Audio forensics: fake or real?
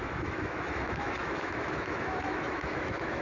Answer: fake